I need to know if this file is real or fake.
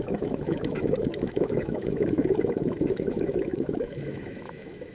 fake